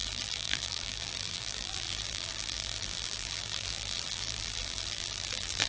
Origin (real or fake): fake